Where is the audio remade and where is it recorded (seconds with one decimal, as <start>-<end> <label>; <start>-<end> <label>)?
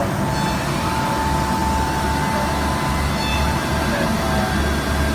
0.0-3.3 recorded; 3.3-4.2 remade; 4.2-5.1 recorded